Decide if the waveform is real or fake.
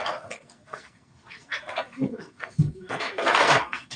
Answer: fake